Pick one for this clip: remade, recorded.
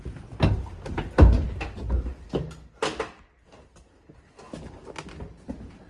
recorded